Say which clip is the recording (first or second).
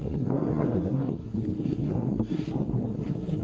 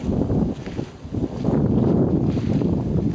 second